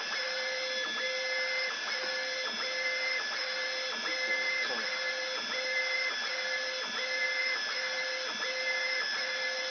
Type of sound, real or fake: real